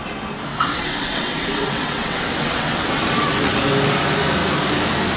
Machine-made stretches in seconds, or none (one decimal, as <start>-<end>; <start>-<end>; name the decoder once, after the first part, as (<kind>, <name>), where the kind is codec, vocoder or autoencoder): 0.5-3.6 (vocoder, WaveNeXt)